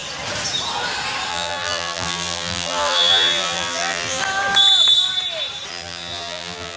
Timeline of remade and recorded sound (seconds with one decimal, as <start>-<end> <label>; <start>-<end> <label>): 0.0-1.3 recorded; 1.3-4.2 remade; 4.2-5.7 recorded; 5.7-6.8 remade